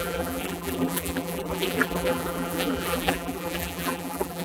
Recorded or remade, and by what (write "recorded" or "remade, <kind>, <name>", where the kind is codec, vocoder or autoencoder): remade, vocoder, BigVGAN v2